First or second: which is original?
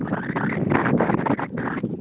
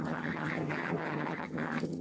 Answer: first